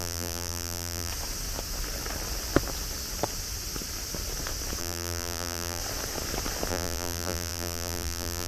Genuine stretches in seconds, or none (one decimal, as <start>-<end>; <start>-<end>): 1.1-4.8; 5.8-6.7